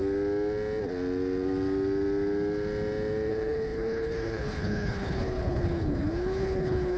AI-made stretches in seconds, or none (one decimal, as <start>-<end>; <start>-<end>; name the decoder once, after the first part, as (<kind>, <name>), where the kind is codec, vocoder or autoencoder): 3.3-7.0 (codec, HILCodec)